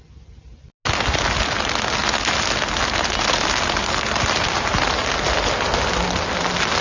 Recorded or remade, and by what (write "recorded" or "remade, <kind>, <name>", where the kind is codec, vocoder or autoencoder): recorded